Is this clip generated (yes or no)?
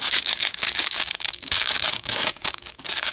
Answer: yes